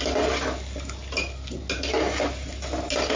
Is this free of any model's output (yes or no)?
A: yes